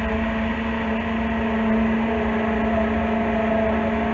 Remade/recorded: recorded